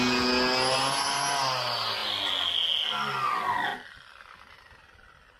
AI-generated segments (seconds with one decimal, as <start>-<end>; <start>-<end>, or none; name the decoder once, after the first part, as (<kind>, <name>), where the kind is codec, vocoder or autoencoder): 3.7-4.2 (vocoder, BigVGAN v2)